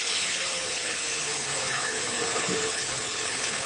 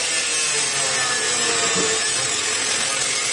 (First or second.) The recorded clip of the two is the second